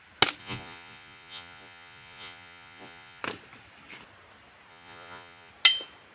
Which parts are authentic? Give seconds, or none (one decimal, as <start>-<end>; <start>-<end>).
0.0-0.4; 3.2-4.7; 5.5-6.1